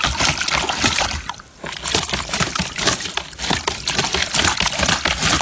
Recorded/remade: recorded